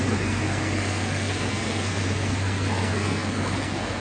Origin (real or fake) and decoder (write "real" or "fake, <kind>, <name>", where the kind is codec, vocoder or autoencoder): fake, codec, SNAC